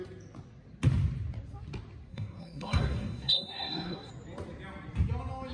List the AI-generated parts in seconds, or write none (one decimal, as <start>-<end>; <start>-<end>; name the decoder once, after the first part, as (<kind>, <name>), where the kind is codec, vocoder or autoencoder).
2.1-4.1 (codec, SNAC)